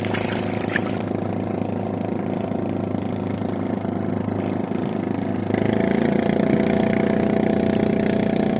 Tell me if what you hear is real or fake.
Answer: real